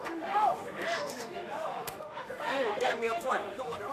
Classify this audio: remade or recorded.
remade